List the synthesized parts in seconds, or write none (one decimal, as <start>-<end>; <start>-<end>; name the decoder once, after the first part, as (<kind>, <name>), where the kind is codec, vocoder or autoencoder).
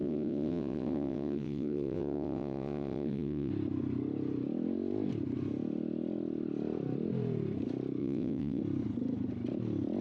0.0-3.5 (vocoder, WaveNeXt); 8.0-8.6